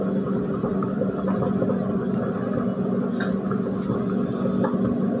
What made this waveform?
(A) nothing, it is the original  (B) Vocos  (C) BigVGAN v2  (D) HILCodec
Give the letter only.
A